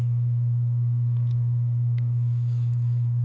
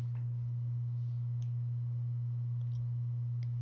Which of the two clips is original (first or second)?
second